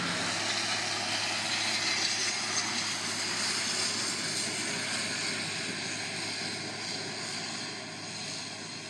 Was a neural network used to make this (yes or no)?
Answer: no